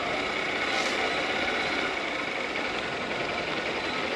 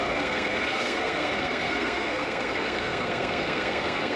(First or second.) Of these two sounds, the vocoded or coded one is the second